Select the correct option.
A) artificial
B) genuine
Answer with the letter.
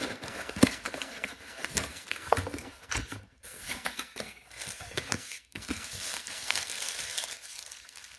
A